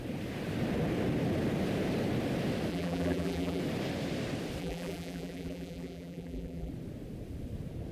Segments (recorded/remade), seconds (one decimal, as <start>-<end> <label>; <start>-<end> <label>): 0.0-2.7 recorded; 2.7-3.6 remade; 3.6-4.6 recorded; 4.6-6.7 remade; 6.7-7.9 recorded